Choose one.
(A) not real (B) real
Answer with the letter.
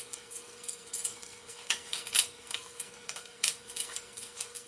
A